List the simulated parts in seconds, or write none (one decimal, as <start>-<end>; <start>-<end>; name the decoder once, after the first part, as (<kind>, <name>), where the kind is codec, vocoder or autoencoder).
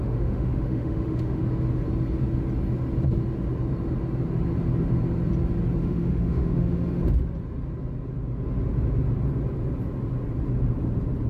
0.0-1.4 (autoencoder, DAC-VAE); 5.8-7.0